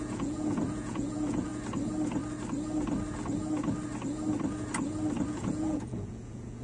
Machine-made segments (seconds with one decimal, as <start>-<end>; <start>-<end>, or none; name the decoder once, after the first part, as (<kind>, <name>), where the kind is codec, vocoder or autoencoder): 0.0-1.5 (vocoder, Vocos); 5.3-6.6